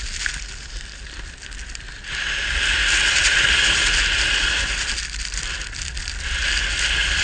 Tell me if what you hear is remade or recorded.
recorded